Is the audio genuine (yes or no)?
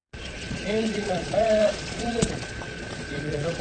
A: no